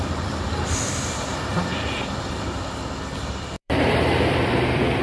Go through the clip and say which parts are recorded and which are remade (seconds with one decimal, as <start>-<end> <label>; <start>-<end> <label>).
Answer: 0.0-1.5 remade; 1.5-3.3 recorded; 3.3-5.0 remade